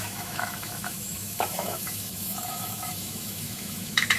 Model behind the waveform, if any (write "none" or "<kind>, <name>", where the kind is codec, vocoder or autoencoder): autoencoder, DAC-VAE